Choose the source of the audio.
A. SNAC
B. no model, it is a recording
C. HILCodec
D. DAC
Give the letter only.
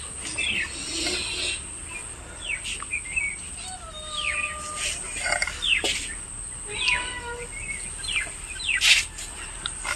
B